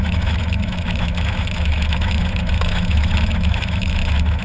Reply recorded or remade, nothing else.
remade